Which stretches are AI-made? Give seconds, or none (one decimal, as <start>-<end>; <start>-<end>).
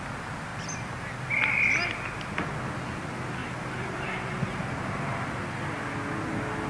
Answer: 0.5-1.2; 3.4-5.1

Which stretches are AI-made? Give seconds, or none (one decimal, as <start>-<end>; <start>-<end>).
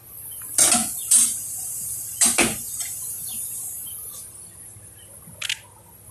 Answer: 0.8-3.2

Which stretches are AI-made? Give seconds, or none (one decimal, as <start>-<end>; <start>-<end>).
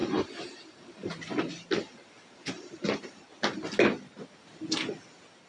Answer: 0.0-3.3